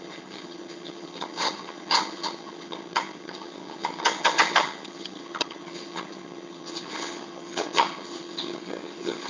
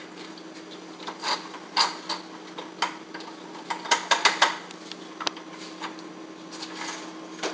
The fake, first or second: first